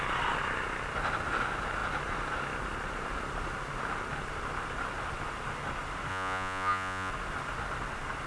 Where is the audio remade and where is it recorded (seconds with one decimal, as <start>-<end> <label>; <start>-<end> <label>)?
0.0-6.1 recorded; 6.1-7.1 remade; 7.1-8.3 recorded